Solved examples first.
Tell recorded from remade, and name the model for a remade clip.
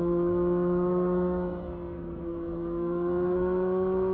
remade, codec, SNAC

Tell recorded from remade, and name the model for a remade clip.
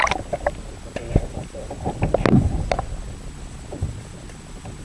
recorded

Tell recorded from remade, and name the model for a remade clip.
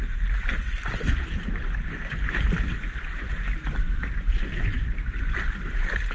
recorded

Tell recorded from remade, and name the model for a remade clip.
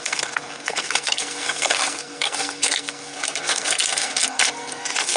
remade, codec, SNAC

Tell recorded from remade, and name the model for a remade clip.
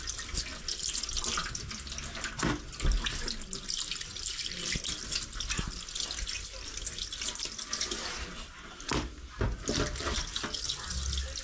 recorded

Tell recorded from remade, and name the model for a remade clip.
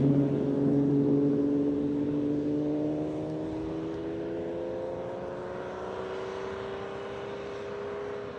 recorded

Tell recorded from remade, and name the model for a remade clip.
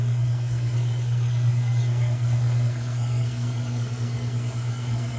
remade, codec, SNAC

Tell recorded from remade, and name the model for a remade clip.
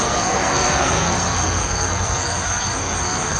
remade, codec, SNAC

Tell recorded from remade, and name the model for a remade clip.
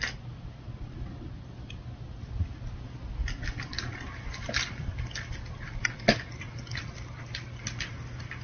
recorded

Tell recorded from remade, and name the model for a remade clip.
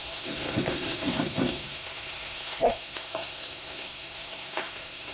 remade, codec, SNAC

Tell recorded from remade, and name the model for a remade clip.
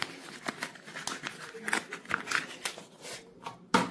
recorded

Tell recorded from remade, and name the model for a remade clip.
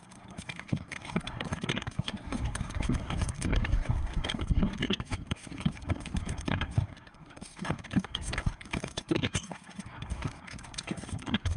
remade, codec, SNAC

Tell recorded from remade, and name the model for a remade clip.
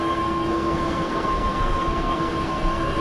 remade, codec, SNAC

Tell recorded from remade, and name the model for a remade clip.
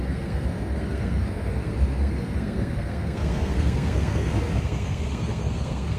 remade, codec, SNAC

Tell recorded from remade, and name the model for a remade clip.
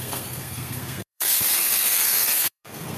remade, codec, SNAC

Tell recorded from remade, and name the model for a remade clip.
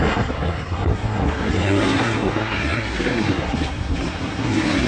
remade, codec, SNAC